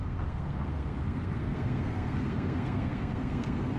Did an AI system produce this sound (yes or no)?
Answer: yes